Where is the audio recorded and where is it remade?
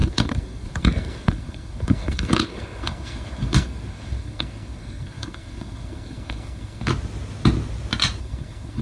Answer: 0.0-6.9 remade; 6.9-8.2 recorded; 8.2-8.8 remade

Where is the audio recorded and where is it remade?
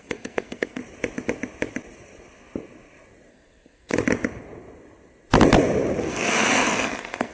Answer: 0.0-0.8 remade; 0.8-3.3 recorded; 3.3-3.9 remade; 3.9-6.0 recorded; 6.0-7.3 remade